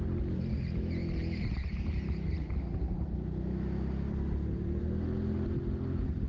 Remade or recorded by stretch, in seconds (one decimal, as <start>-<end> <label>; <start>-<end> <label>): 0.0-6.3 recorded